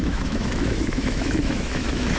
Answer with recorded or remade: remade